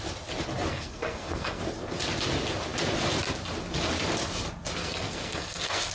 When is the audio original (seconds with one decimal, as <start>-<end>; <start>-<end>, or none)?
0.0-0.7; 1.6-4.8